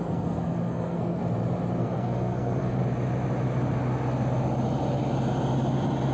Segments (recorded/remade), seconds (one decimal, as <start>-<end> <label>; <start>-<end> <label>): 0.0-1.2 remade; 1.2-1.8 recorded; 1.8-2.8 remade; 2.8-6.1 recorded